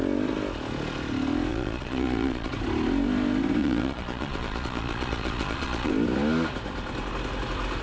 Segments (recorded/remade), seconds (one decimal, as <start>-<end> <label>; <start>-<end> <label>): 0.0-1.5 recorded; 1.5-2.5 remade; 2.5-3.6 recorded; 3.6-5.9 remade; 5.9-7.8 recorded